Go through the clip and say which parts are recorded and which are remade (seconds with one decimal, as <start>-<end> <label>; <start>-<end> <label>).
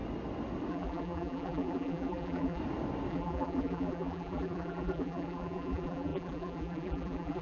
0.0-0.7 recorded; 0.7-2.6 remade; 2.6-3.1 recorded; 3.1-7.4 remade